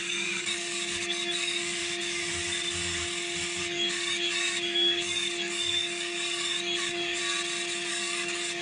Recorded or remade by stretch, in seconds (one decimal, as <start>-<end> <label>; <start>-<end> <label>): 0.0-1.8 remade; 1.8-3.6 recorded; 3.6-7.2 remade; 7.2-7.9 recorded; 7.9-8.6 remade